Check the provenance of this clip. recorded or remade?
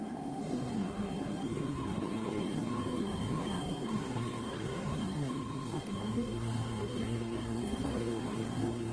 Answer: remade